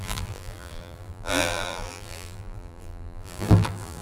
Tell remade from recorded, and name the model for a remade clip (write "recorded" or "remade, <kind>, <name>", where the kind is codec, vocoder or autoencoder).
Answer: remade, vocoder, BigVGAN v2